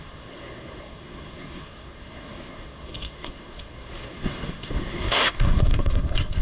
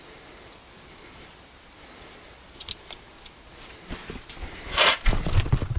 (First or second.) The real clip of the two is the second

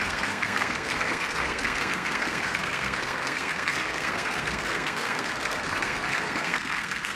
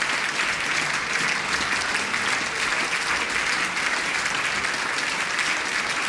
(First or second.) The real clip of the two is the second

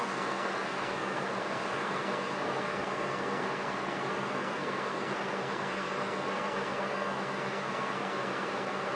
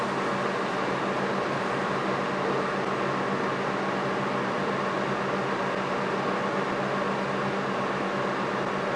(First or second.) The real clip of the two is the second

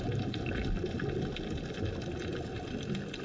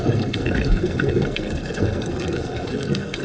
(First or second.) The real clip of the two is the first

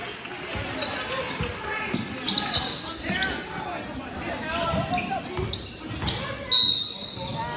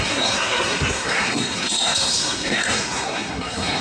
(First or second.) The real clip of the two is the first